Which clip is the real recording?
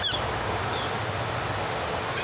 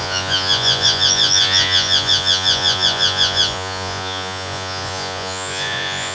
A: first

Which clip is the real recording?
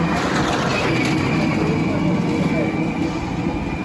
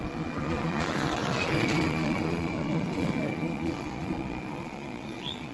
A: first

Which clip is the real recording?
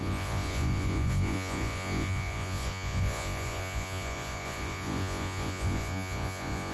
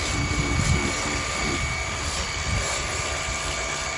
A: second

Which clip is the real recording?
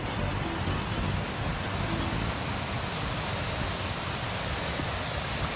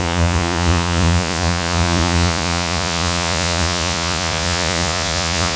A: first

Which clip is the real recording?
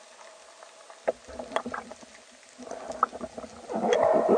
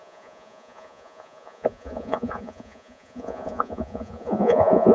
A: first